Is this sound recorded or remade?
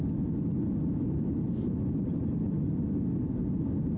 recorded